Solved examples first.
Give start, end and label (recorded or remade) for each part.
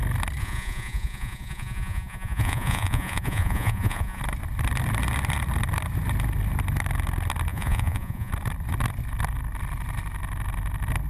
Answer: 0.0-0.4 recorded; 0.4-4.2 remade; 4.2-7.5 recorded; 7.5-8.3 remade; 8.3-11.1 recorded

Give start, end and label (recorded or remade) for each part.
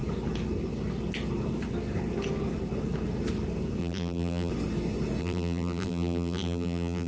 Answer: 0.0-3.8 recorded; 3.8-4.5 remade; 4.5-5.2 recorded; 5.2-7.1 remade